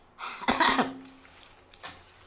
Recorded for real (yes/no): yes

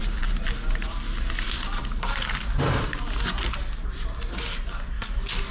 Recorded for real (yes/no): yes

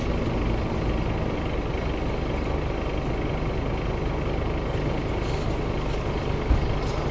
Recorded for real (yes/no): yes